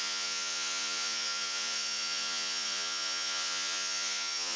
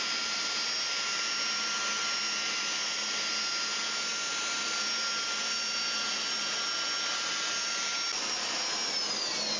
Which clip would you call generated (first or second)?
first